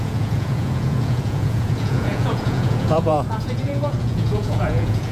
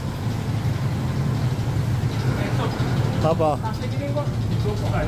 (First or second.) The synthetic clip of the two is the first